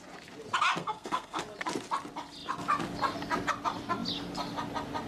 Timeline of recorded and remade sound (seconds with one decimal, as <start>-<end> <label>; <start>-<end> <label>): 0.0-0.8 recorded; 0.8-1.4 remade; 1.4-5.1 recorded